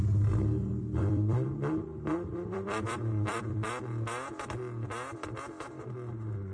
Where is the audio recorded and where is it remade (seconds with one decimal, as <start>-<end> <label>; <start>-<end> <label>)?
0.0-0.6 recorded; 0.6-3.7 remade; 3.7-6.5 recorded